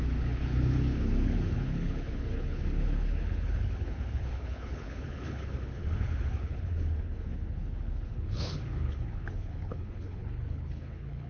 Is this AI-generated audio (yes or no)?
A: yes